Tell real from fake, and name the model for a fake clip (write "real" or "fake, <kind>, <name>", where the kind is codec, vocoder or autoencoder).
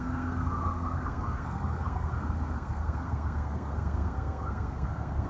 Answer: fake, codec, SNAC